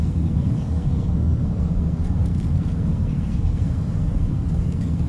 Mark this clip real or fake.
fake